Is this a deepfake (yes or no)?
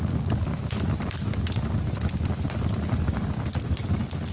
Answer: no